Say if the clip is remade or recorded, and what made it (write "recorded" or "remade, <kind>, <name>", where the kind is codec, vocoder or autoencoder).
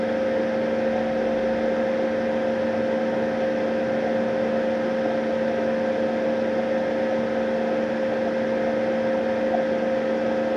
recorded